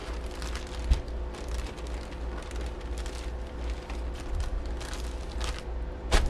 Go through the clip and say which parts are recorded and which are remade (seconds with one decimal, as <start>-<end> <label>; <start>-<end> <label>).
0.0-6.3 recorded